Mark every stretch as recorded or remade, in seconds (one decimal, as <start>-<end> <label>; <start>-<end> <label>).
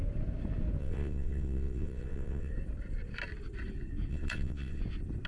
0.0-0.8 recorded; 0.8-2.5 remade; 2.5-4.1 recorded; 4.1-4.8 remade; 4.8-5.3 recorded